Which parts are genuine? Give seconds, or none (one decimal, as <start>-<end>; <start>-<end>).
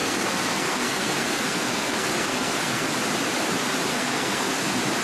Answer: 2.9-3.9; 4.5-5.0